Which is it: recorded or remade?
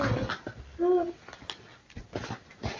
recorded